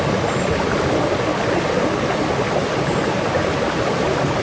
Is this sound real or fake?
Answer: real